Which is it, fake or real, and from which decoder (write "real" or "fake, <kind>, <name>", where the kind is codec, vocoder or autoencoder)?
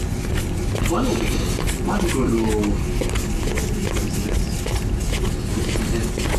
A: real